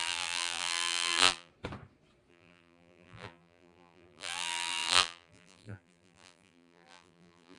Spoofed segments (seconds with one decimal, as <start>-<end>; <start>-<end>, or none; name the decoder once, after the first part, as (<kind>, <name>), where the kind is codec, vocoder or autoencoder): 0.0-1.5 (vocoder, BigVGAN v2); 2.3-7.6